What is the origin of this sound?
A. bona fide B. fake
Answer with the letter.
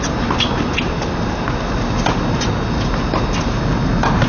A